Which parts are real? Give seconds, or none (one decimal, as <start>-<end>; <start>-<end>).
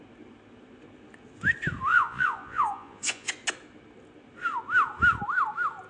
0.0-1.9; 3.3-5.9